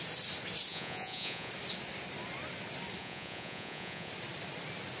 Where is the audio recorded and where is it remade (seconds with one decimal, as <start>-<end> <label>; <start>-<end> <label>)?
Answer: 0.0-0.7 recorded; 0.7-1.5 remade; 1.5-3.0 recorded; 3.0-4.1 remade; 4.1-5.0 recorded

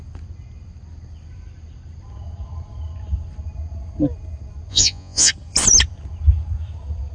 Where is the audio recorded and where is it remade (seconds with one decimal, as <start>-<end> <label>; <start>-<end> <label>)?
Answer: 0.0-4.7 recorded; 4.7-5.3 remade; 5.3-7.1 recorded

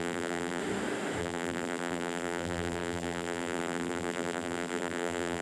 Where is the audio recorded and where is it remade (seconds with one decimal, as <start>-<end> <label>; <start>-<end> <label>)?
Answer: 0.0-0.6 remade; 0.6-1.2 recorded; 1.2-5.4 remade

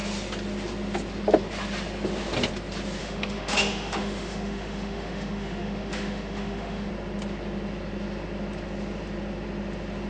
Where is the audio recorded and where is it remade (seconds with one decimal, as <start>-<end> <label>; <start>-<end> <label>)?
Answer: 0.0-3.0 recorded; 3.0-6.9 remade; 6.9-10.1 recorded